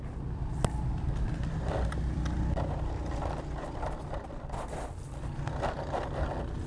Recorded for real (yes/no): yes